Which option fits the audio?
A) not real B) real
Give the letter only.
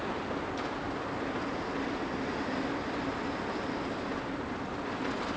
B